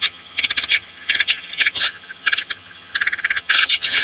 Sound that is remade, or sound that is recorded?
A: remade